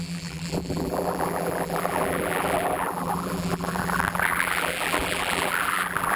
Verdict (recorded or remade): remade